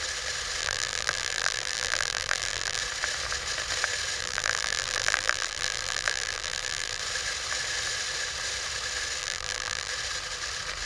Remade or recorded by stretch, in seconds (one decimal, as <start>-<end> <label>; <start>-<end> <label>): 0.0-0.6 recorded; 0.6-2.8 remade; 2.8-4.2 recorded; 4.2-7.0 remade; 7.0-9.2 recorded; 9.2-9.9 remade; 9.9-10.8 recorded